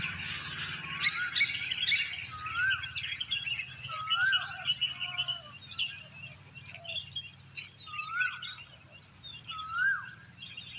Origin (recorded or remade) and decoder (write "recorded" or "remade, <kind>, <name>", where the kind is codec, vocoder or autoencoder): recorded